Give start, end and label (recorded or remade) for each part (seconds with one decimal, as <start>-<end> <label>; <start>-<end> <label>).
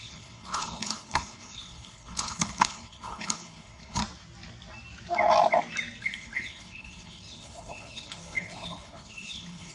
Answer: 0.0-4.0 remade; 4.0-6.0 recorded; 6.0-9.7 remade